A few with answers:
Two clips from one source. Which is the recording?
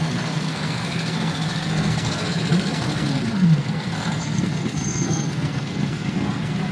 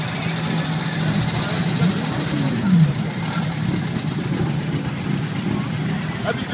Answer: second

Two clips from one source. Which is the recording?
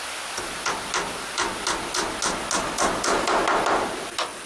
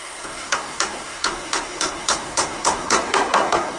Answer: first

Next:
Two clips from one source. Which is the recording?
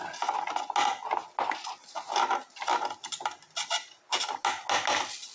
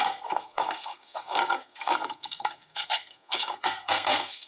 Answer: first